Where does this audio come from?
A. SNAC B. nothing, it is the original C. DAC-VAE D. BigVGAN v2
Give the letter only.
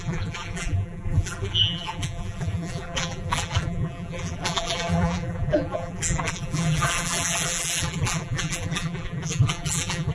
D